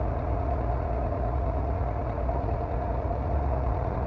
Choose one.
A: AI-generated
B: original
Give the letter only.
A